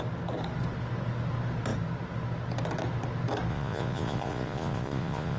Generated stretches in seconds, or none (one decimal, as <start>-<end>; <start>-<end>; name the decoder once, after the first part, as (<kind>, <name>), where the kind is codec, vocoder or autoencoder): 3.5-5.4 (vocoder, Vocos)